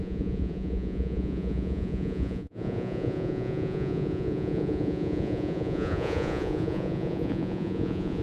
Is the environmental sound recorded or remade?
remade